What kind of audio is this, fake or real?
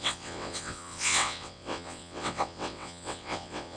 fake